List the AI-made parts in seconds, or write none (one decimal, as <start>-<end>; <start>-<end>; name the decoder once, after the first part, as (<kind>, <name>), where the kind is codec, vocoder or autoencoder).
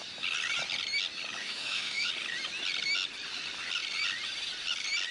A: 1.4-2.1 (autoencoder, DAC-VAE)